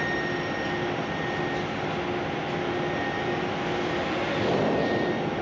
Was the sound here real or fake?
real